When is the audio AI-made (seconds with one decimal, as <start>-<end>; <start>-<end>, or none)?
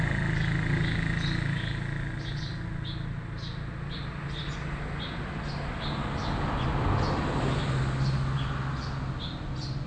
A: none